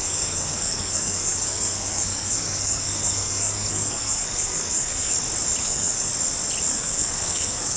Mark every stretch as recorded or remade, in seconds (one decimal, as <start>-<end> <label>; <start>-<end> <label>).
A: 0.0-5.1 remade; 5.1-5.6 recorded; 5.6-6.1 remade; 6.1-6.7 recorded; 6.7-7.8 remade

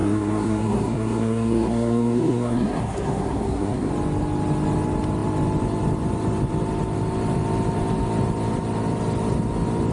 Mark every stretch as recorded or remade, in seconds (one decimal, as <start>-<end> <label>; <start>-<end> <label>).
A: 0.0-3.9 remade; 3.9-9.9 recorded